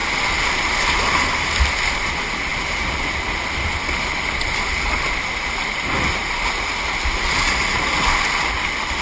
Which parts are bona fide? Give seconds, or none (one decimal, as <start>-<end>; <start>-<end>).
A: 0.0-9.0

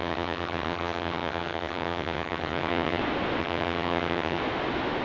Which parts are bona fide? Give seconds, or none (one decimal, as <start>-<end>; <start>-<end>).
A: 3.0-3.4; 4.4-5.0